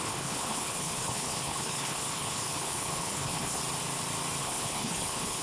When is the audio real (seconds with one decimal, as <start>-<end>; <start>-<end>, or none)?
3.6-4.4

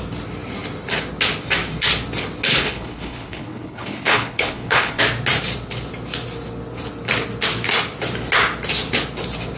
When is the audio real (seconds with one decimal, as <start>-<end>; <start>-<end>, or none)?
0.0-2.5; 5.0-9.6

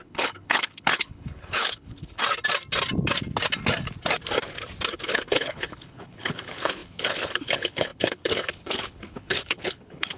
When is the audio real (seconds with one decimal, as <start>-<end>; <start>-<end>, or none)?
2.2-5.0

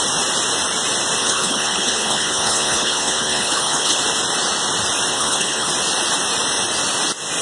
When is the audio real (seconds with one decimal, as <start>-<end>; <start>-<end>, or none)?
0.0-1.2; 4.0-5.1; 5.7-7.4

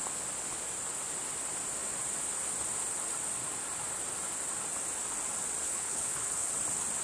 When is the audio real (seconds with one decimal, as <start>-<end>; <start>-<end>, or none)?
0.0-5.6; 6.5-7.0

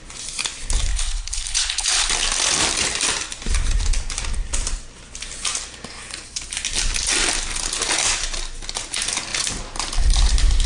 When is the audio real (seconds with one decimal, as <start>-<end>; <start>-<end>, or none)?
0.0-0.9; 2.1-10.7

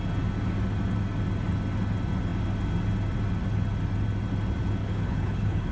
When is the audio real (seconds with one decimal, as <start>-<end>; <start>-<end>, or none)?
0.0-4.8

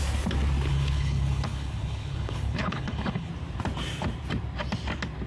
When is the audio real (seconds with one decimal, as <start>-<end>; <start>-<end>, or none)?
0.0-0.7; 3.3-5.3